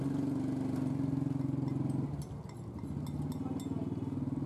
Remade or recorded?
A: recorded